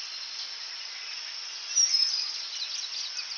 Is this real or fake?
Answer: real